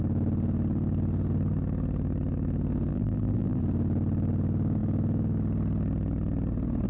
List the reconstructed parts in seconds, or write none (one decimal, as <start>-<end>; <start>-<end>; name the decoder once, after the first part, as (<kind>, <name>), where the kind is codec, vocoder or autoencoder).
2.9-3.6 (vocoder, BigVGAN v2)